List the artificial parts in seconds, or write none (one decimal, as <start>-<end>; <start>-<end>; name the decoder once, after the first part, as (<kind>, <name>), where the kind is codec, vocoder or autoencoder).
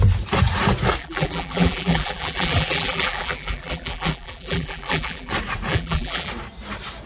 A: 1.0-5.3 (vocoder, BigVGAN v2); 5.7-6.3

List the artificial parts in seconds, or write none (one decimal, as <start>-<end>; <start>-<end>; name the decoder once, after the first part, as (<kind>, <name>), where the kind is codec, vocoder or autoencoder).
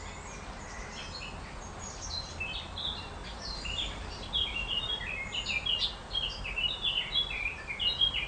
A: 3.2-8.3 (vocoder, BigVGAN v2)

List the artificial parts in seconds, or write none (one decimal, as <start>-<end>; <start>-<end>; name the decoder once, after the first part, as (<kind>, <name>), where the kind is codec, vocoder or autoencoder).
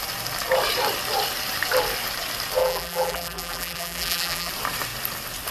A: 2.6-4.5 (vocoder, BigVGAN v2)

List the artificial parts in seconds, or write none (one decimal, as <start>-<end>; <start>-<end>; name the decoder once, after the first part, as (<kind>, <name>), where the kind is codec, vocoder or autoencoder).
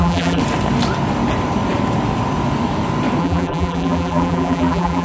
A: 0.0-0.4 (vocoder, BigVGAN v2); 3.2-5.0